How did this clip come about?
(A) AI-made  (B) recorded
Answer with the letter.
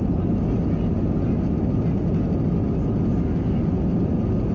B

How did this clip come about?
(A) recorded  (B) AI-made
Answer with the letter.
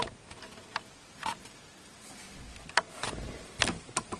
A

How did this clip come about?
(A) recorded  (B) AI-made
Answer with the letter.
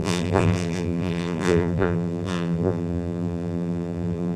B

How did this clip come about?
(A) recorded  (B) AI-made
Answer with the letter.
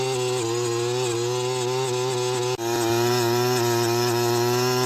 A